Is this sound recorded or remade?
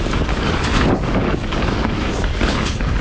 remade